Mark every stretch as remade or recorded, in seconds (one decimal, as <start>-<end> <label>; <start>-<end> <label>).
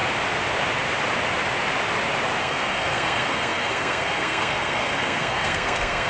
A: 0.0-2.4 recorded; 2.4-6.1 remade